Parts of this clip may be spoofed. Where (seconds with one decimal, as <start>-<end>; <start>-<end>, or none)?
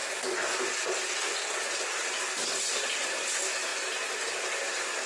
none